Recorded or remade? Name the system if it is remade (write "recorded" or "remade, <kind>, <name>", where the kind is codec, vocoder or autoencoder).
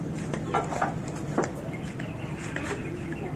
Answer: recorded